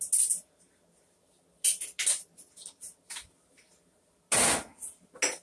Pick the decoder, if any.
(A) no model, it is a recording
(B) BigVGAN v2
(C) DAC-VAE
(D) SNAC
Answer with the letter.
A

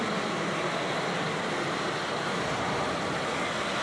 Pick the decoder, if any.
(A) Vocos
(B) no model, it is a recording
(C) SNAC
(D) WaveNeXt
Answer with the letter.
B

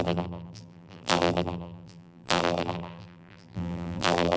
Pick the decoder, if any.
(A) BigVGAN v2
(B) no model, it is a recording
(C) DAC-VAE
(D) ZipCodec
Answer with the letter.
A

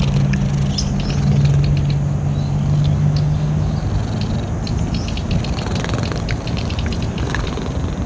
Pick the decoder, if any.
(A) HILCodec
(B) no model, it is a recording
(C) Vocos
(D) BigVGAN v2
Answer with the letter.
B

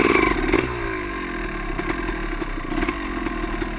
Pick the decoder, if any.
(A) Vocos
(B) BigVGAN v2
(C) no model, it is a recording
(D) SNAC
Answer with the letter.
C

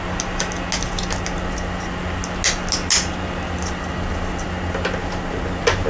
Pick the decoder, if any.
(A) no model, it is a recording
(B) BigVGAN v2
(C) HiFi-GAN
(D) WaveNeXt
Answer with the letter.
A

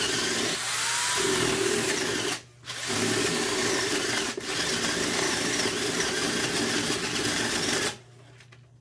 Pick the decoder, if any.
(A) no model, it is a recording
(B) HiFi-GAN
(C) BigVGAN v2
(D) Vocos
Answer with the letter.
A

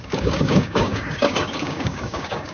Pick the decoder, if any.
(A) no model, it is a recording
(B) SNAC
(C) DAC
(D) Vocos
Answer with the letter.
C